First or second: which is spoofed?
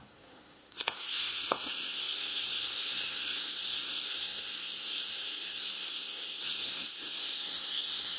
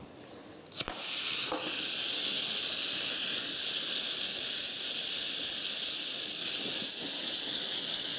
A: first